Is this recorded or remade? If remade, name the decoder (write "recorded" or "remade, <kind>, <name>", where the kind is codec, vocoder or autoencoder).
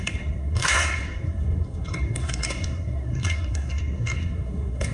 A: remade, codec, SNAC